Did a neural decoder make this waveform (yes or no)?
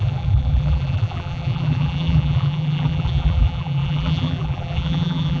yes